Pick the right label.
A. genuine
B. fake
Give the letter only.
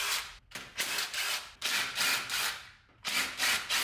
A